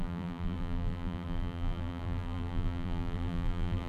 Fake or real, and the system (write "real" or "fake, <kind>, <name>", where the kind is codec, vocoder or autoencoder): fake, vocoder, BigVGAN v2